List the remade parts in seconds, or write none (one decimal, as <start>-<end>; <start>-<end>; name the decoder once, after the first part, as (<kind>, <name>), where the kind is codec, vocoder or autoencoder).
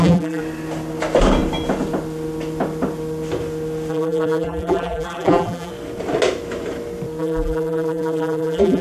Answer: 0.0-0.4 (vocoder, BigVGAN v2); 3.9-5.7; 7.2-8.8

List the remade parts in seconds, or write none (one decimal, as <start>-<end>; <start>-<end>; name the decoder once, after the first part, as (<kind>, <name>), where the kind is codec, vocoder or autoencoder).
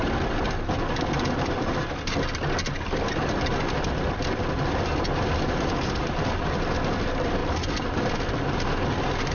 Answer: none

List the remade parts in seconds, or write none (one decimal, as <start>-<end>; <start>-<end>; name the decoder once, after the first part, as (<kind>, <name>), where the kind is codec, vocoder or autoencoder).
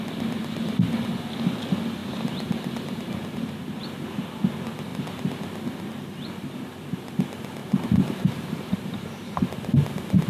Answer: 2.0-3.8 (vocoder, BigVGAN v2); 7.6-9.7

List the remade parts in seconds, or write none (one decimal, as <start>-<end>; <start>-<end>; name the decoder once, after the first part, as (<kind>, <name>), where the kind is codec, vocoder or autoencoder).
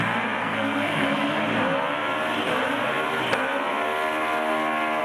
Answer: 0.4-1.4 (codec, SNAC)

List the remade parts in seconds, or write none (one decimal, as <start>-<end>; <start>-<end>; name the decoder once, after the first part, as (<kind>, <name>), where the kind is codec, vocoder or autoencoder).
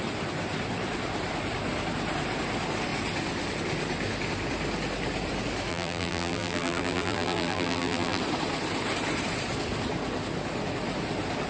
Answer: 5.7-8.2 (vocoder, BigVGAN v2)